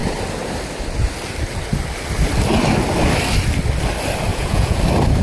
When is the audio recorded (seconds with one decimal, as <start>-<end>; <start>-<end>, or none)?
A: 0.0-4.3; 4.8-5.2